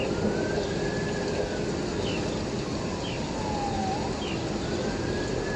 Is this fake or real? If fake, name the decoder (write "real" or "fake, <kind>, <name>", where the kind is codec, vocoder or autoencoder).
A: real